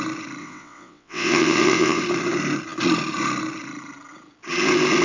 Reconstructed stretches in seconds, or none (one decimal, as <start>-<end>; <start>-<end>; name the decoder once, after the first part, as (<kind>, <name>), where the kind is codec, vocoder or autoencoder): 0.4-2.0 (vocoder, WaveNeXt)